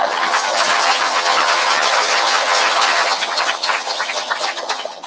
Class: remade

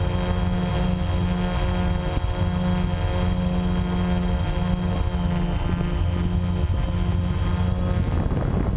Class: recorded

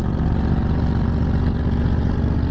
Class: recorded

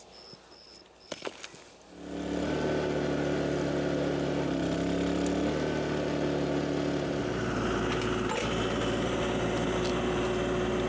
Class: recorded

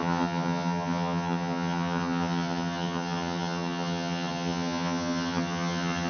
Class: remade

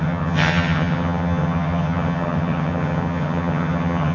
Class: remade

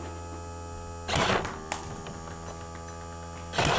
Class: recorded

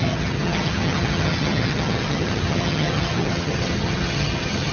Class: remade